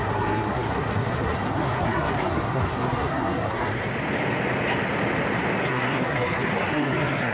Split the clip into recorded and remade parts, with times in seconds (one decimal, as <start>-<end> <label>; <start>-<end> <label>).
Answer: 0.0-3.9 remade; 3.9-5.6 recorded; 5.6-7.3 remade

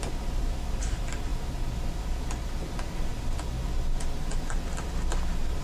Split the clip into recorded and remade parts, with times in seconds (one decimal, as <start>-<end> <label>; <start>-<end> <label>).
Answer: 0.0-5.6 recorded

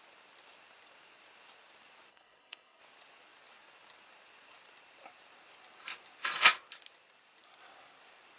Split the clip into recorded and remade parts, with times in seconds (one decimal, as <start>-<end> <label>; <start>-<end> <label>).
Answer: 0.0-2.1 recorded; 2.1-2.8 remade; 2.8-8.4 recorded

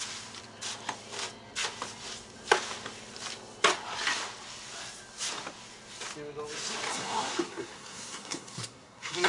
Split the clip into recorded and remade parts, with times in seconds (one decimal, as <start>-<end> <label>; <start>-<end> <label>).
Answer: 0.0-6.9 recorded; 6.9-9.3 remade

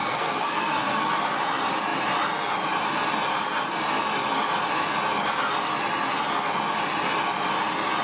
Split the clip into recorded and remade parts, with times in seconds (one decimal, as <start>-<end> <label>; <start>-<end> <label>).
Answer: 0.0-1.2 remade; 1.2-8.0 recorded

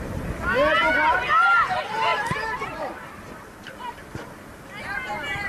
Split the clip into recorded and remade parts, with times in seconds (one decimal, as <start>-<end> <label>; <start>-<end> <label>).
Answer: 0.0-5.5 recorded